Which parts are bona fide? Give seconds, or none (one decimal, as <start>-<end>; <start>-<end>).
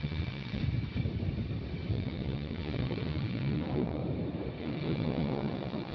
0.6-1.9; 4.0-4.6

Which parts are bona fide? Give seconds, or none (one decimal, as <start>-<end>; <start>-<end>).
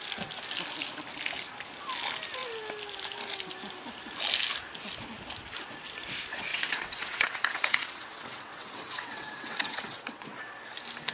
0.0-6.5; 10.4-11.1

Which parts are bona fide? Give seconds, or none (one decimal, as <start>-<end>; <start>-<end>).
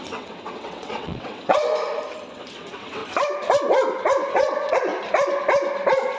1.7-2.3; 3.0-4.3; 4.9-6.2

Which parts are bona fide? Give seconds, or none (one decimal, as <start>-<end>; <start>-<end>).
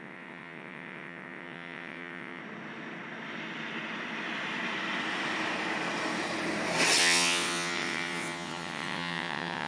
2.4-7.0